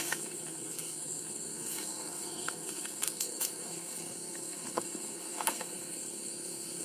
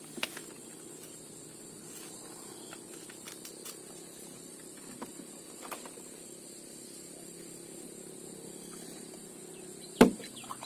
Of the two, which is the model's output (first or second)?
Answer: first